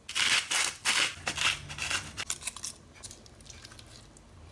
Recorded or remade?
recorded